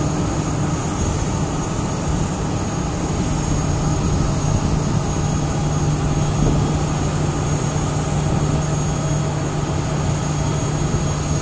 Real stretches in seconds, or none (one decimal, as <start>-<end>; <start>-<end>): 0.0-11.4